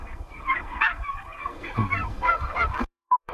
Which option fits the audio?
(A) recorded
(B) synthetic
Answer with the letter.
B